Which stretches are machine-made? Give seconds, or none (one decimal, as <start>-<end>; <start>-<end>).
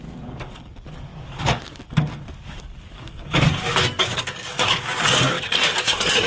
0.0-6.3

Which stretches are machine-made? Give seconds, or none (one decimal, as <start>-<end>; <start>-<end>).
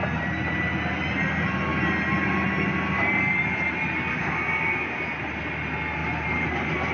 4.1-5.0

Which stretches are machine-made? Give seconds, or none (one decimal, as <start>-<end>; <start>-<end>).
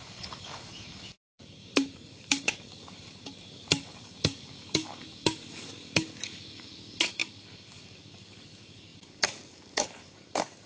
0.0-10.7